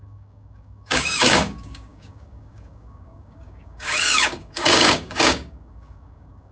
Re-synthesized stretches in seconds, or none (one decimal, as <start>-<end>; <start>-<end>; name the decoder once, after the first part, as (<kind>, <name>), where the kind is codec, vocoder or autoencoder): 0.0-6.5 (codec, DAC)